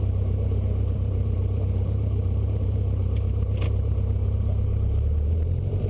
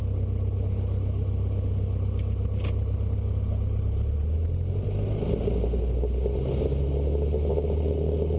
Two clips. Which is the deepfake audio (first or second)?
first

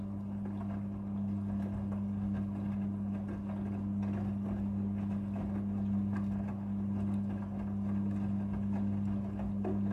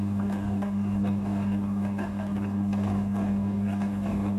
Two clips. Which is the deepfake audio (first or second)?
second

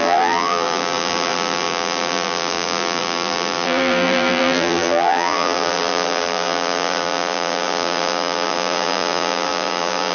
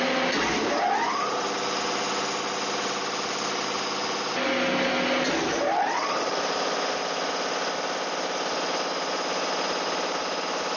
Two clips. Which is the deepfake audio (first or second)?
first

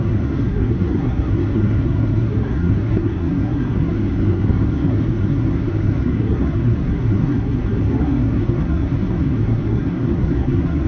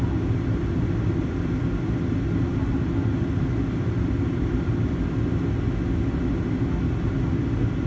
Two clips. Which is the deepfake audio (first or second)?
first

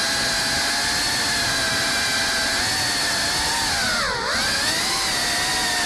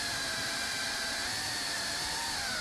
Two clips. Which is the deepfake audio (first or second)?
second